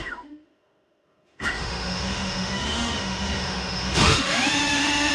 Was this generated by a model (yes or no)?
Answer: yes